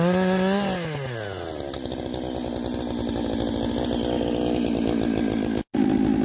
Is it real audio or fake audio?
real